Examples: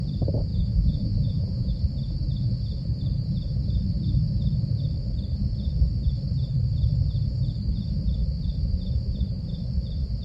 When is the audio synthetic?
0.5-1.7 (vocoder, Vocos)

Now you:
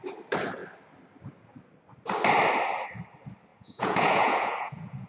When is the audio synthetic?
3.5-5.1 (vocoder, Vocos)